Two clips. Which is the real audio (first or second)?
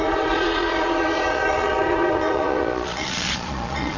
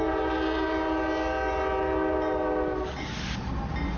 second